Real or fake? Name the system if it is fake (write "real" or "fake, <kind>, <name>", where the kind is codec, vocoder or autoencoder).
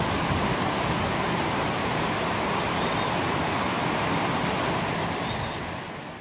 real